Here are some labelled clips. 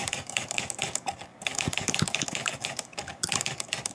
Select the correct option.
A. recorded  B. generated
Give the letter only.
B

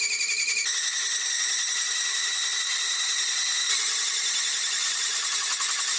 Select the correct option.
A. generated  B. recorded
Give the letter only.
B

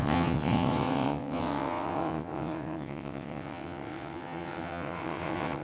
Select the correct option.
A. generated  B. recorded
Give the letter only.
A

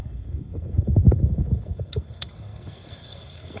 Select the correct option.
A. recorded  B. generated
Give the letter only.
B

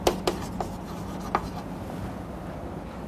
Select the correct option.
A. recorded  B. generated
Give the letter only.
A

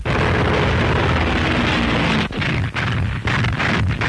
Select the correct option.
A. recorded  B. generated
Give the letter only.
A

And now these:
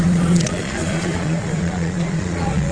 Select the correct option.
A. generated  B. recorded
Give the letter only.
A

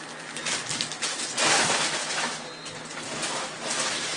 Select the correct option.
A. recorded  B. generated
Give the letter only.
A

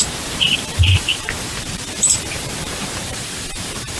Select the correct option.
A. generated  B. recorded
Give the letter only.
A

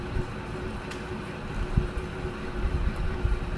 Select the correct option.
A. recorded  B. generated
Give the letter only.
A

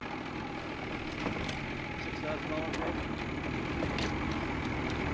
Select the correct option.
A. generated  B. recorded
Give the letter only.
B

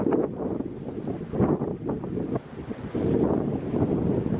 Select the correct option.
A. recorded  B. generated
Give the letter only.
A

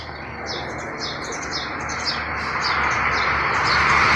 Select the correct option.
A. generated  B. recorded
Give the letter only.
B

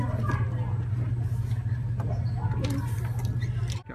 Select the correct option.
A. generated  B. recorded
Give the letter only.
B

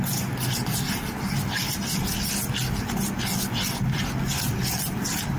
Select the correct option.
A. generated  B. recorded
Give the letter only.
B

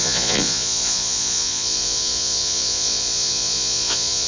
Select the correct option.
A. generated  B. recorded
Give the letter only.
A